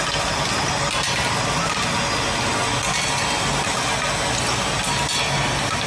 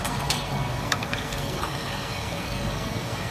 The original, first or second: first